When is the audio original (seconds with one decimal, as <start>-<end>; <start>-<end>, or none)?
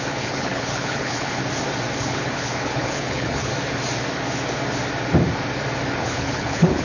1.4-2.0; 3.5-6.0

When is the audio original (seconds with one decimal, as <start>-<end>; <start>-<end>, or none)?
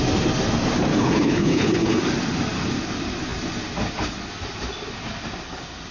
0.0-0.9; 2.0-5.9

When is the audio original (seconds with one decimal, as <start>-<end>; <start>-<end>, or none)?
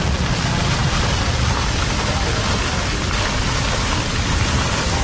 0.0-5.0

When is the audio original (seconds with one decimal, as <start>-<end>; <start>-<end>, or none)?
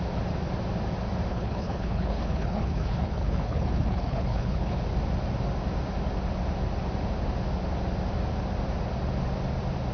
0.0-1.3; 4.8-9.9